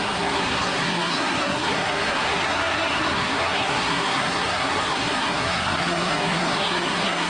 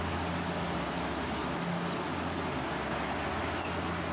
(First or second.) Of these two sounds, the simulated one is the first